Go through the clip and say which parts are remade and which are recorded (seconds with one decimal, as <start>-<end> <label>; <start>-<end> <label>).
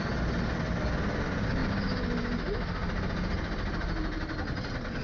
0.0-5.0 recorded